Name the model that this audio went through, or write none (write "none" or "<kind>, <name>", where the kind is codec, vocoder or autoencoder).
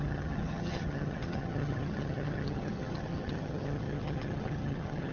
vocoder, HiFi-GAN